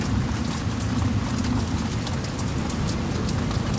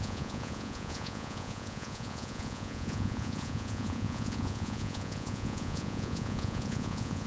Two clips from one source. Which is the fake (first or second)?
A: second